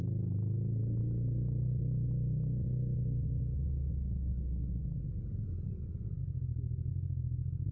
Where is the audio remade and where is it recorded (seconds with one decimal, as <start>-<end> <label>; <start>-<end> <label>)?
0.0-6.2 recorded; 6.2-6.9 remade; 6.9-7.7 recorded